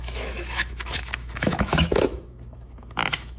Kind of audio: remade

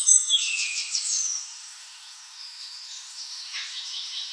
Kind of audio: remade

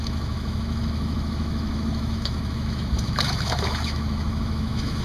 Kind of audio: remade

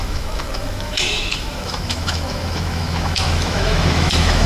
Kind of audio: remade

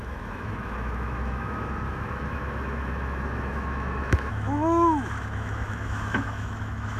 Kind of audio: remade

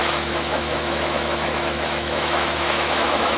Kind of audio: remade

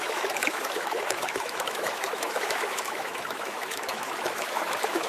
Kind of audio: remade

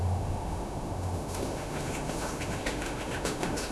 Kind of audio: remade